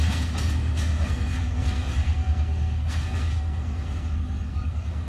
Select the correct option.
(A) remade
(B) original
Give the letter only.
A